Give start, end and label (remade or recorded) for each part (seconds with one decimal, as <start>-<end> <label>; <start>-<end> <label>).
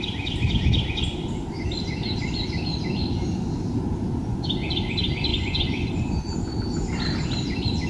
0.0-4.2 recorded; 4.2-4.7 remade; 4.7-5.3 recorded; 5.3-5.9 remade; 5.9-7.9 recorded